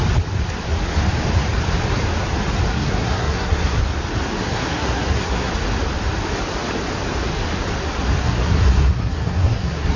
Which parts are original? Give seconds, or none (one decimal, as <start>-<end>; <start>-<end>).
0.0-2.7; 3.8-4.4; 5.5-8.2